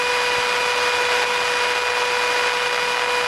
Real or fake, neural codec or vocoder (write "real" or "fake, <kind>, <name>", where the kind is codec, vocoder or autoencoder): real